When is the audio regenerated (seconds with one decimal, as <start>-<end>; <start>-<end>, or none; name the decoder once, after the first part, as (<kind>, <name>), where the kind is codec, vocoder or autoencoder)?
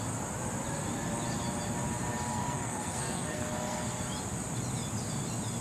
2.3-4.0 (codec, SNAC)